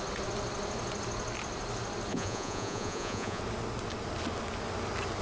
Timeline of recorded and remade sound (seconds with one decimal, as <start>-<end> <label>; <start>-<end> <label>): 0.0-2.1 recorded; 2.1-3.4 remade; 3.4-5.2 recorded